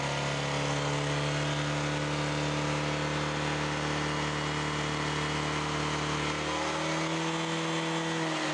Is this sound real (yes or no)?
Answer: yes